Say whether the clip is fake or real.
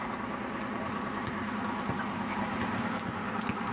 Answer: real